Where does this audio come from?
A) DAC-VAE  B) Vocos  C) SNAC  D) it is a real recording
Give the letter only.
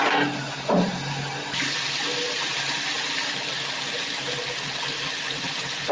D